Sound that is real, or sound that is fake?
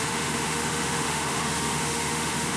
fake